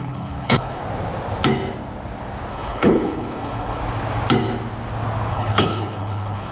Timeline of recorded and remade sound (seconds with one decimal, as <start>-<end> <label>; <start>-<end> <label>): 0.0-0.8 remade; 0.8-2.5 recorded; 2.5-3.8 remade; 3.8-5.3 recorded; 5.3-6.5 remade